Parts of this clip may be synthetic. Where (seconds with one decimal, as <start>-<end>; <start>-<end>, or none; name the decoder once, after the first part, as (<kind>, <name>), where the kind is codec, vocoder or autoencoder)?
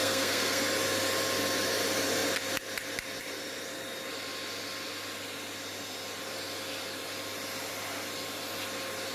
0.0-0.6 (codec, SNAC)